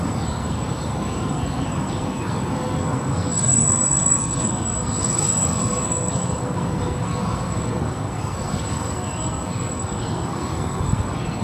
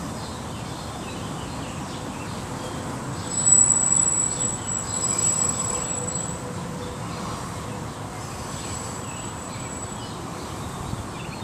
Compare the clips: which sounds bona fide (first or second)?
second